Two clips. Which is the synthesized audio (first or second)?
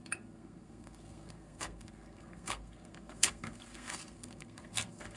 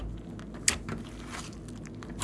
first